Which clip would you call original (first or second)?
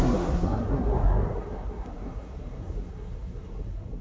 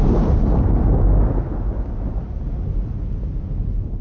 second